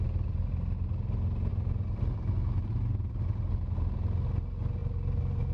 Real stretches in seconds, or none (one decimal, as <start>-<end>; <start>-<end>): 0.0-1.5; 2.3-5.5